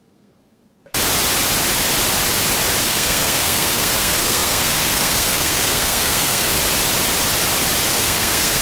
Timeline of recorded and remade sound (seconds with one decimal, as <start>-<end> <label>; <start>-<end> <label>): 0.0-0.8 remade; 0.8-2.8 recorded; 2.8-6.6 remade; 6.6-7.9 recorded; 7.9-8.6 remade

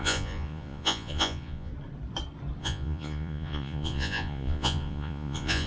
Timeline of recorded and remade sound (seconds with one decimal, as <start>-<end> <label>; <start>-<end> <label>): 0.0-1.7 remade; 1.7-2.6 recorded; 2.6-5.7 remade

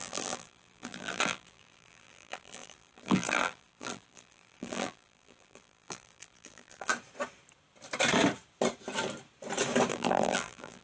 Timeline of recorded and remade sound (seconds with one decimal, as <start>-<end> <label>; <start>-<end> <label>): 0.0-6.9 remade; 6.9-9.9 recorded; 9.9-10.8 remade

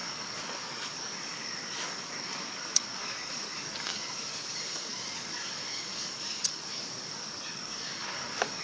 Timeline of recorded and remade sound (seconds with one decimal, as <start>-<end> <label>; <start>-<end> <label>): 0.0-8.6 remade

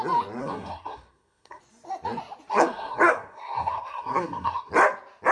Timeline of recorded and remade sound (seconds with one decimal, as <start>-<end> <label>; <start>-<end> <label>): 0.0-0.4 recorded; 0.4-1.6 remade; 1.6-2.5 recorded; 2.5-4.7 remade; 4.7-5.3 recorded

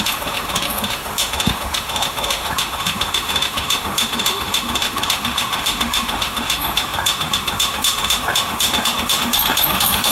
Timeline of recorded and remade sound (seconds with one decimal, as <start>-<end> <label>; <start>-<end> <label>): 0.0-10.1 remade

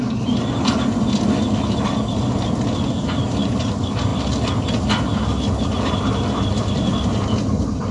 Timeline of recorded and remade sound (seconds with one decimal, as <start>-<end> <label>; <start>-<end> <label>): 0.0-7.9 recorded

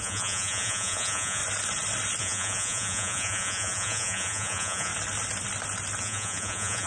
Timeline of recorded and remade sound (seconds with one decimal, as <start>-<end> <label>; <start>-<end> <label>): 0.0-1.4 remade; 1.4-2.2 recorded; 2.2-4.9 remade; 4.9-6.0 recorded; 6.0-6.9 remade